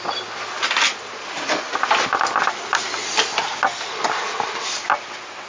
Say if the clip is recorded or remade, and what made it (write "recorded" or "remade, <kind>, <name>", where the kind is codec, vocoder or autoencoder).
recorded